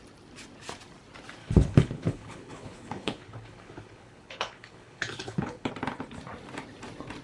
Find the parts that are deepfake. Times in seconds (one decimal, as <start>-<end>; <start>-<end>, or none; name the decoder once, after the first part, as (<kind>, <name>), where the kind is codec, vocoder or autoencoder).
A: 1.4-5.7 (codec, HILCodec)